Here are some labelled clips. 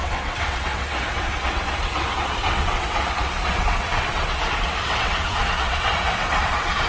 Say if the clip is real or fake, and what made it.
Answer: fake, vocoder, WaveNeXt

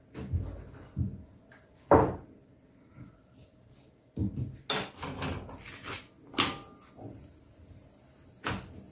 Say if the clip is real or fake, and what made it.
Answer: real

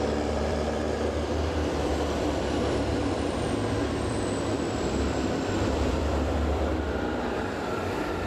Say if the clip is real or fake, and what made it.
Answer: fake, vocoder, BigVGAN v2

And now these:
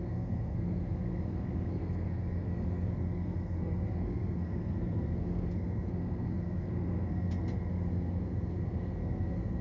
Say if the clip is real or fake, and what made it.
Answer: fake, codec, SNAC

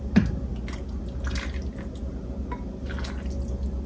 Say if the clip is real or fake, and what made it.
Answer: real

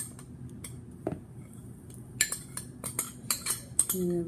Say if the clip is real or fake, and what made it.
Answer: real